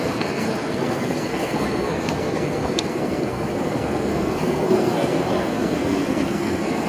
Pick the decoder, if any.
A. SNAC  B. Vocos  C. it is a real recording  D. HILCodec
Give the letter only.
A